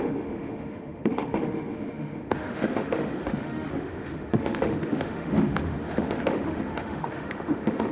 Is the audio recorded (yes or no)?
no